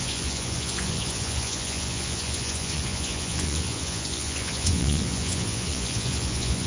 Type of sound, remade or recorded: remade